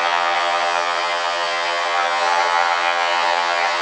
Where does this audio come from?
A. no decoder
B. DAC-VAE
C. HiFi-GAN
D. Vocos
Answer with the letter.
C